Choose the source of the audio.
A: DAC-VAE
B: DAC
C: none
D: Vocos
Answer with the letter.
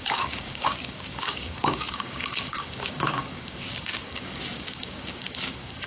B